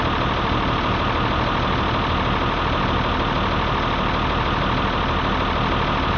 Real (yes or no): yes